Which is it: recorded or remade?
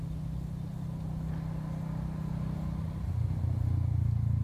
recorded